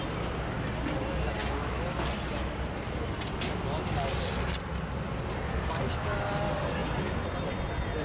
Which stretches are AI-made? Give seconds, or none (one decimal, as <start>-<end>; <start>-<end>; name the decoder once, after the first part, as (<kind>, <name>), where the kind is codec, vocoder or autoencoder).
none